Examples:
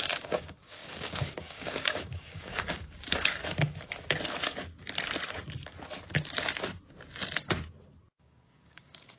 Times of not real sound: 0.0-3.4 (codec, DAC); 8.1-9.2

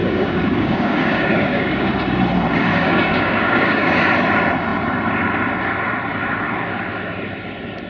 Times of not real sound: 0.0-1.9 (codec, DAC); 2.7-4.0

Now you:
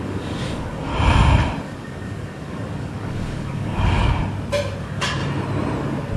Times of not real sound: 0.0-0.9 (codec, DAC); 1.6-4.2; 4.8-5.2

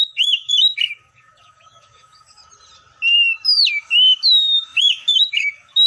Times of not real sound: 0.0-2.4 (codec, DAC); 3.7-5.9

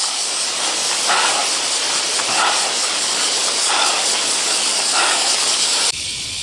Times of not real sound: 0.0-1.4 (codec, DAC); 2.7-6.4